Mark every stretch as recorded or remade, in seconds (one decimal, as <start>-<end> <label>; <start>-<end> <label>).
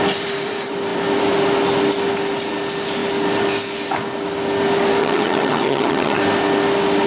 0.0-5.0 recorded; 5.0-6.2 remade; 6.2-7.1 recorded